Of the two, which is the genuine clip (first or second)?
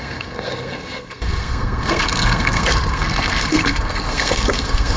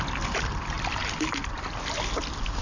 second